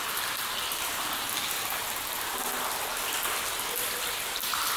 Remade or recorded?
recorded